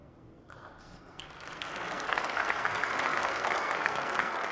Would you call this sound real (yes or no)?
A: no